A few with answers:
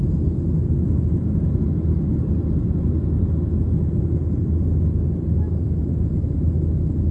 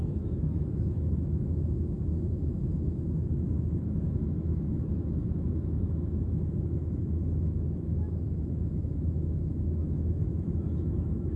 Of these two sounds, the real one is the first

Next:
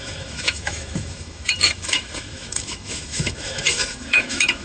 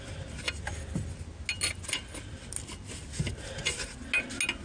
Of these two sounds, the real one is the second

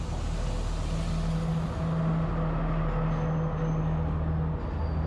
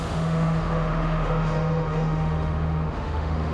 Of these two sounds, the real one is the first